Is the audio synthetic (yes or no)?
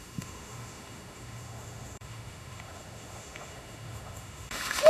yes